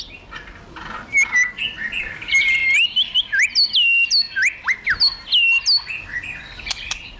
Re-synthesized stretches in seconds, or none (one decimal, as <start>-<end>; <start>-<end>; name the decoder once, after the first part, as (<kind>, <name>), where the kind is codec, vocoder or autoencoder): none